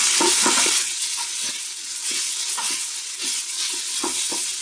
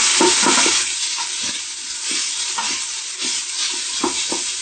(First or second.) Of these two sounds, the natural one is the second